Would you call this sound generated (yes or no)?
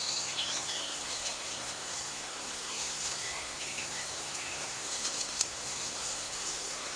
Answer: yes